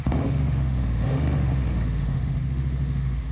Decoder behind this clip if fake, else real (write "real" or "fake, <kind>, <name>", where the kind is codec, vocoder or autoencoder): fake, autoencoder, DAC-VAE